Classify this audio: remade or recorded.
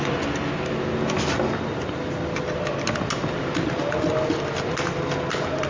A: recorded